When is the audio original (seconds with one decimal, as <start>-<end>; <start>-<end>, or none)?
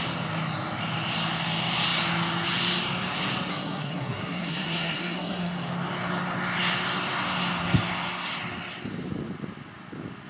0.0-3.5; 5.6-10.3